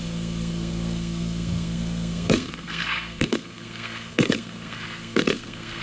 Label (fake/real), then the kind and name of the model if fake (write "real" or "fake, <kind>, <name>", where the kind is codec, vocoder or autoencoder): fake, codec, SNAC